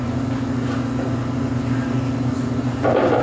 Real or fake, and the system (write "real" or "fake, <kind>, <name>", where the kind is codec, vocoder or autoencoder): real